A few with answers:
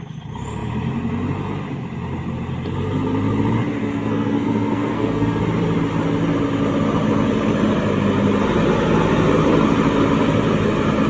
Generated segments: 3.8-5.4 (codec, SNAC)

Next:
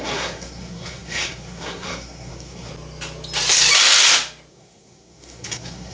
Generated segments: 0.0-2.7 (codec, SNAC); 4.5-5.9

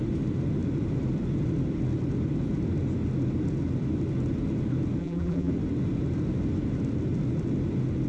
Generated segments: 5.0-5.5 (vocoder, BigVGAN v2)

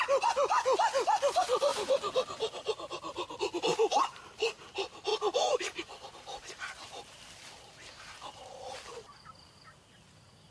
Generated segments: 1.7-2.7 (vocoder, BigVGAN v2); 3.9-4.6; 5.1-8.3

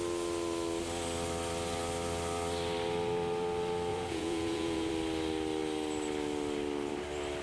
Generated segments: 3.9-4.9 (vocoder, Vocos)